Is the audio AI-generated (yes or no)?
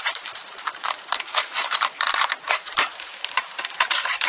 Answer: yes